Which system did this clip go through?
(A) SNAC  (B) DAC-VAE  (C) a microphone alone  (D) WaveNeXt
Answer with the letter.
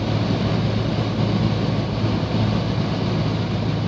C